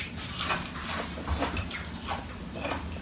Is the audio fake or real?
real